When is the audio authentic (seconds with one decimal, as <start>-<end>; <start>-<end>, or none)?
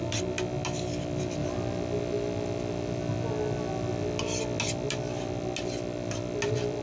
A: 0.0-6.8